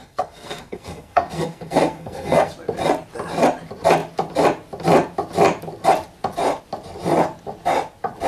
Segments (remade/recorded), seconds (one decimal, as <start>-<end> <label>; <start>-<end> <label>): 0.0-2.5 remade; 2.5-8.3 recorded